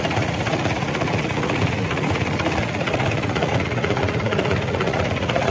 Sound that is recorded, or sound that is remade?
remade